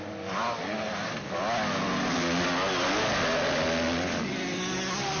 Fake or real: real